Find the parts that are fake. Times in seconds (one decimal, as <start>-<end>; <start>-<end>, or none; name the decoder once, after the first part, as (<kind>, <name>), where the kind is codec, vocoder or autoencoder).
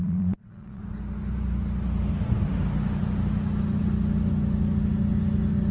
0.0-0.8 (vocoder, Vocos)